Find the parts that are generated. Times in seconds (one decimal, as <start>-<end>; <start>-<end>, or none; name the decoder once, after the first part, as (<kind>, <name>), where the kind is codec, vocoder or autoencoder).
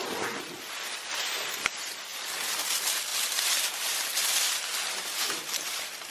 none